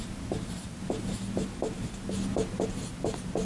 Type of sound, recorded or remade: recorded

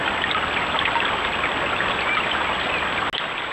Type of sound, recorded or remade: recorded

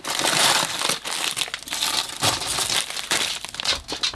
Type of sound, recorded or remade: recorded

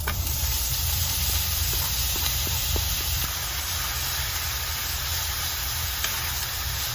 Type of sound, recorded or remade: remade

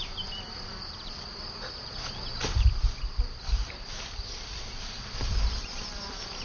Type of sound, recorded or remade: remade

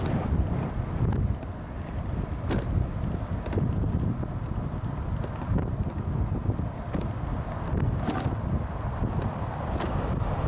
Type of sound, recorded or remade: recorded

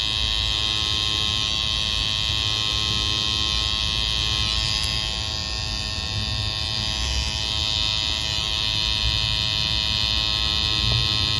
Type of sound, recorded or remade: recorded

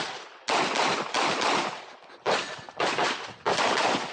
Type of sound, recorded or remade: recorded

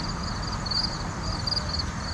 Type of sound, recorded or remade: recorded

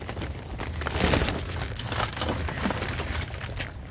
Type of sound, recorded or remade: recorded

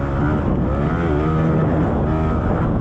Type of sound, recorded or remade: recorded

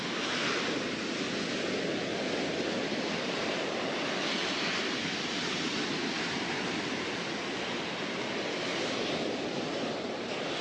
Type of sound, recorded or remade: recorded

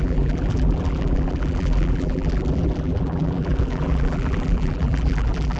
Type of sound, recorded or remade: remade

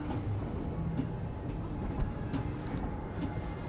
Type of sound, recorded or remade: recorded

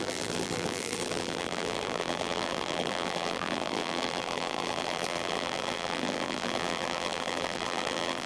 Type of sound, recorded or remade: remade